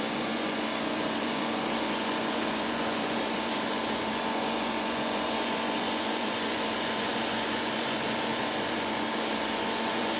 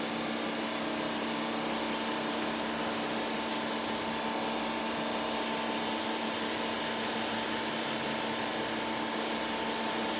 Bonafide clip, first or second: second